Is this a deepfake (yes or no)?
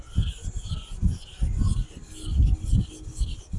no